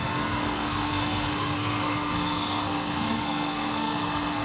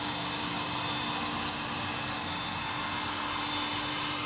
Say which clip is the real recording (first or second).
second